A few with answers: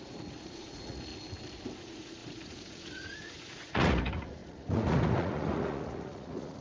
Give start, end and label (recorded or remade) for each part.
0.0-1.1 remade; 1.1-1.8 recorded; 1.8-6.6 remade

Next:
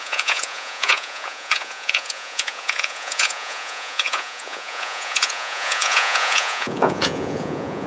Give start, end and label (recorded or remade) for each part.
0.0-7.9 remade

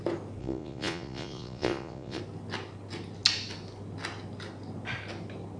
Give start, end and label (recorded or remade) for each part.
0.0-0.4 recorded; 0.4-2.2 remade; 2.2-5.6 recorded

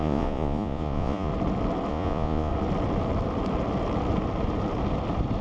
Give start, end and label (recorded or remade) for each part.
0.0-1.3 remade; 1.3-1.9 recorded; 1.9-2.5 remade; 2.5-5.4 recorded

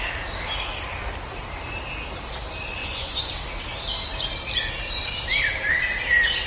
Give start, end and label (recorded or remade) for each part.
0.0-2.8 recorded; 2.8-3.3 remade; 3.3-6.5 recorded

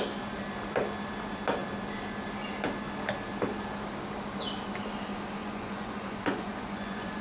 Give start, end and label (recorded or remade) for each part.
0.0-5.4 recorded; 5.4-7.2 remade